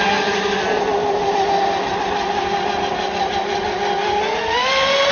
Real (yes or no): yes